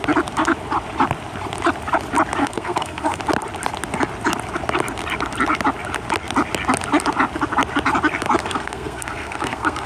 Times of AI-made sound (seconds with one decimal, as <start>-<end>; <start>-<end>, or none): 2.4-3.2; 8.4-9.9